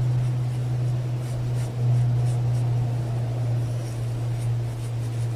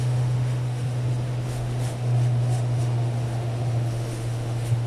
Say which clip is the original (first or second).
first